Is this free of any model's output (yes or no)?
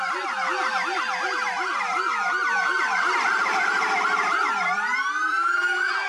no